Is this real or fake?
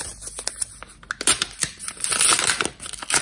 real